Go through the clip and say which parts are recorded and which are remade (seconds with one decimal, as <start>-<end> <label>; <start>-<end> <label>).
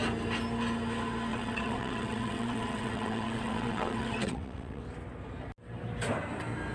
0.0-1.3 recorded; 1.3-4.8 remade; 4.8-6.7 recorded